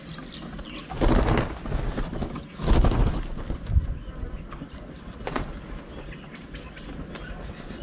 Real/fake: real